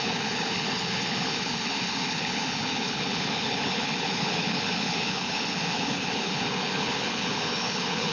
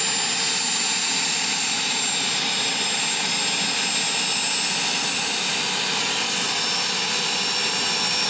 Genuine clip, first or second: second